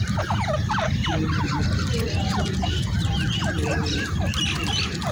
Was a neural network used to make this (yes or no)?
no